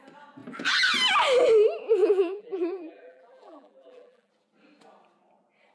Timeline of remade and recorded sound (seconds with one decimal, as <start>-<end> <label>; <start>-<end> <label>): 0.0-2.0 recorded; 2.0-4.3 remade; 4.3-5.7 recorded